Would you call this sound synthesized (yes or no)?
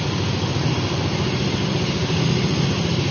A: no